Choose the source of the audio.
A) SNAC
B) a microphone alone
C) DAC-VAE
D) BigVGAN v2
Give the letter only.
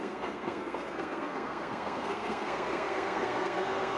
A